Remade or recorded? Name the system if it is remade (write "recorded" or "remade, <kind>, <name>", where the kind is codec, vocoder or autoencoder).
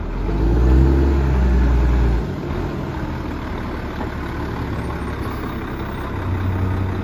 recorded